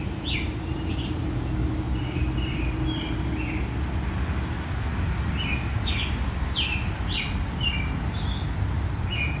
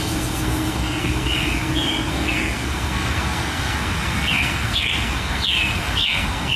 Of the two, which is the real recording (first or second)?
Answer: first